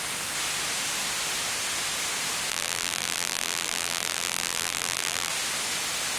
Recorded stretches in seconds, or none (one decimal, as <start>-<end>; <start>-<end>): 0.0-2.5; 5.3-6.2